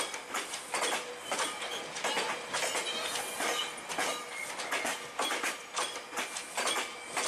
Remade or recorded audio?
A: recorded